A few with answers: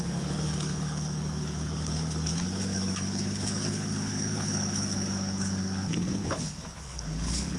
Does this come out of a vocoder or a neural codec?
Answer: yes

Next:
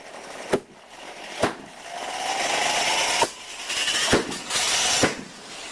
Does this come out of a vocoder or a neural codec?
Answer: no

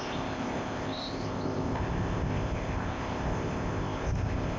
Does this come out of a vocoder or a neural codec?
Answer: yes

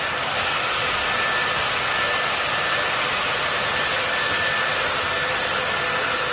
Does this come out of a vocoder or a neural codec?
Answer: no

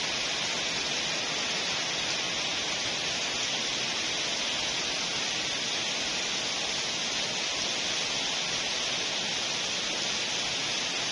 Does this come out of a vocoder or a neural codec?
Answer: no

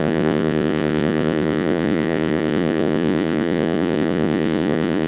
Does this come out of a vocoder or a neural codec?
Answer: yes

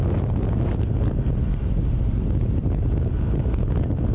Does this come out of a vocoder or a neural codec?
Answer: no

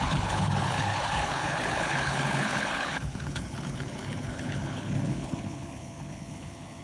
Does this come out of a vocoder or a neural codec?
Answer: yes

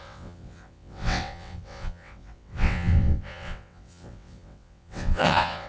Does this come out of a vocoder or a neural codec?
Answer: yes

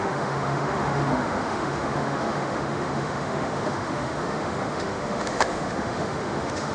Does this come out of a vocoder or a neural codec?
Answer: yes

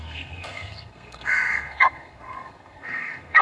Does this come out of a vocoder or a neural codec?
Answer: yes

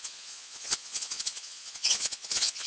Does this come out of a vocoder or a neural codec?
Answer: yes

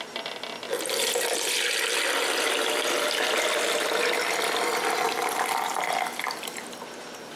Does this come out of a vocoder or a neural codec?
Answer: no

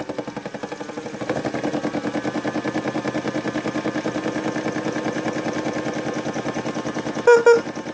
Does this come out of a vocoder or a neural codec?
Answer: no